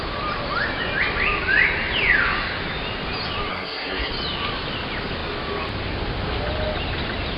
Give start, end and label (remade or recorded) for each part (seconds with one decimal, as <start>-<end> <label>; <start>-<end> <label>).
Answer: 0.0-3.5 recorded; 3.5-4.1 remade; 4.1-7.4 recorded